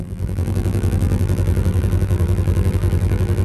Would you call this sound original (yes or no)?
no